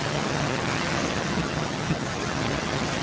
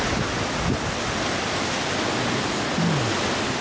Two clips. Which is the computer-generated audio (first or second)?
first